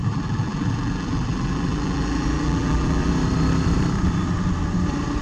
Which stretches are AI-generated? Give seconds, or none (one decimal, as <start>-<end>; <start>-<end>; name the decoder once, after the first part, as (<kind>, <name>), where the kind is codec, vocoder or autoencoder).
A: 0.0-3.1 (vocoder, BigVGAN v2)